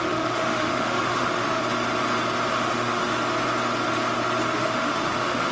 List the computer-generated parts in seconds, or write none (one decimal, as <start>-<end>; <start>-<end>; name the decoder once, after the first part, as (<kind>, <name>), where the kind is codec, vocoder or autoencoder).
0.0-1.6 (autoencoder, DAC-VAE); 2.5-3.1; 4.5-5.5